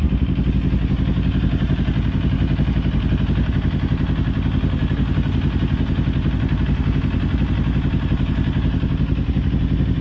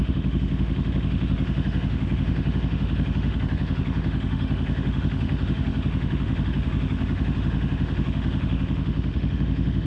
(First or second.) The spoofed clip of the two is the second